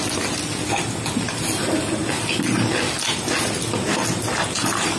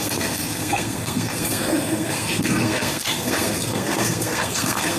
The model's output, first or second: second